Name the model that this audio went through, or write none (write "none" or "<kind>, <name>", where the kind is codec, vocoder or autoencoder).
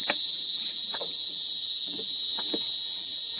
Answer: vocoder, BigVGAN v2